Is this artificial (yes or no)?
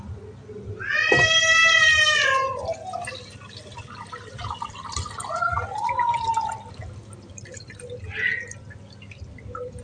no